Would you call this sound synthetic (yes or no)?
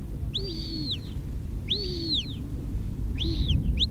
no